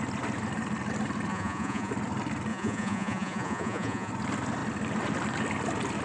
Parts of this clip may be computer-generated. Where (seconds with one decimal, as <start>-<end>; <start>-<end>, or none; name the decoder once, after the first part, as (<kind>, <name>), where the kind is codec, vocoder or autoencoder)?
1.3-1.9 (vocoder, Vocos); 2.5-4.1